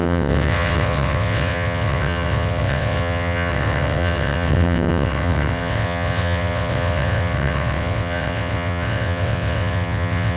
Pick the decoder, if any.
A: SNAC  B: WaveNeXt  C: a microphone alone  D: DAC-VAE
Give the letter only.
B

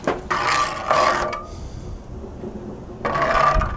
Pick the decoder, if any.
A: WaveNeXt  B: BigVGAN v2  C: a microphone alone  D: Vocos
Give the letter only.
C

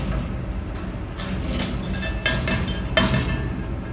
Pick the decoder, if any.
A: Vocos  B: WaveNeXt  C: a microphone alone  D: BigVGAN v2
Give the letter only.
C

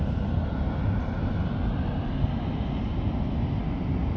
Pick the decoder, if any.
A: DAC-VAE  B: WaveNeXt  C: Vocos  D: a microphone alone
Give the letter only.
D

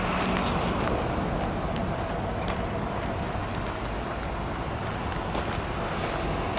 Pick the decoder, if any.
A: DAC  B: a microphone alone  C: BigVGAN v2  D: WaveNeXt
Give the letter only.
B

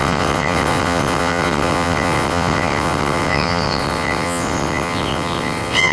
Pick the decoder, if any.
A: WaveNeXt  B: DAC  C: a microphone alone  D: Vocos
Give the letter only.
A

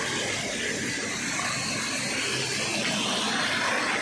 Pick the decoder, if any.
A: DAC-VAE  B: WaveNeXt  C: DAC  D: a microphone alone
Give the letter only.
D